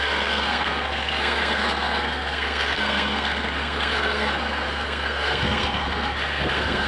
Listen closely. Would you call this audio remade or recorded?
remade